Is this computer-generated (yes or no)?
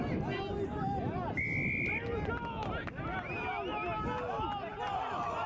no